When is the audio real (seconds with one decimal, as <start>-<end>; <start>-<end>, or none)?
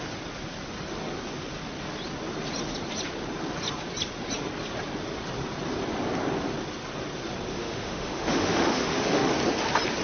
0.0-7.5; 9.3-10.0